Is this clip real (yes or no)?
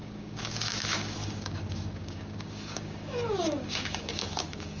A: no